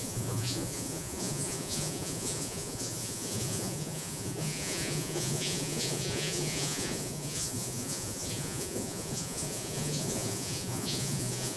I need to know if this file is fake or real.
fake